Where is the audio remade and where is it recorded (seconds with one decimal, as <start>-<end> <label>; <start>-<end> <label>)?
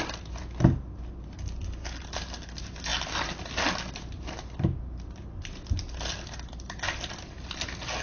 0.0-8.0 recorded